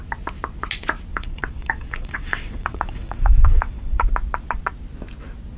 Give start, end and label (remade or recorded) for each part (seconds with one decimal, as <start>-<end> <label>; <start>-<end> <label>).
0.0-1.1 recorded; 1.1-4.1 remade; 4.1-5.6 recorded